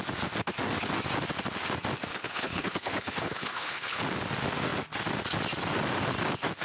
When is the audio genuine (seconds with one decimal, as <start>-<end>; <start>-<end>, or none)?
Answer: 0.0-2.1; 4.0-6.6